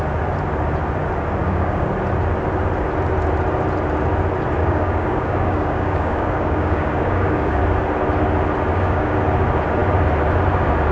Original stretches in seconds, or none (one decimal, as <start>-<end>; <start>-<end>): 0.0-1.4; 1.9-4.6; 7.6-8.7; 9.2-10.9